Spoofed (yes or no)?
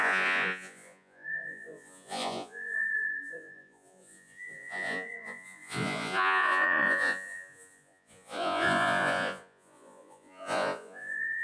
yes